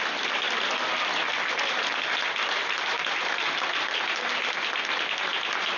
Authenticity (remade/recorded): recorded